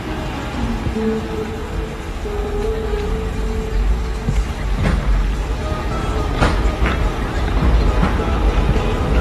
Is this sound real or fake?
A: real